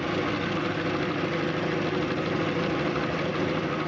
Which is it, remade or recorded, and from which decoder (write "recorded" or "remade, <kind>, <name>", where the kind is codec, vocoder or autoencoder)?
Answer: recorded